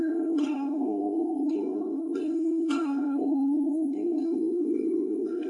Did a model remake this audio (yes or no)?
yes